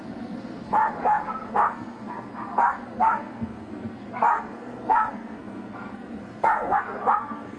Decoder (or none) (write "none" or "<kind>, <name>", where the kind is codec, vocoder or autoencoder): codec, SNAC